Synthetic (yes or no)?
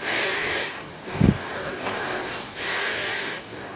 yes